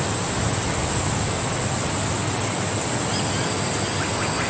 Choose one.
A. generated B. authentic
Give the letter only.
B